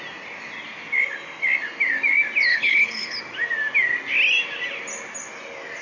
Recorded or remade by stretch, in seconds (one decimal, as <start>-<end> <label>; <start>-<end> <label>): 0.0-2.5 recorded; 2.5-3.2 remade; 3.2-5.8 recorded